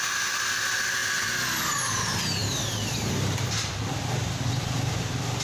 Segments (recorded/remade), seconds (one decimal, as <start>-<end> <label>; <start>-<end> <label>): 0.0-2.4 recorded; 2.4-3.5 remade; 3.5-5.4 recorded